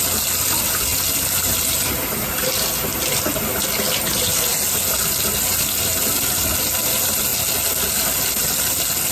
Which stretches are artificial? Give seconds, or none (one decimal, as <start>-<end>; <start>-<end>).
none